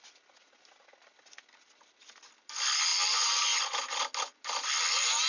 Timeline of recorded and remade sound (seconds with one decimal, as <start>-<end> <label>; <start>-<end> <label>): 0.0-5.3 recorded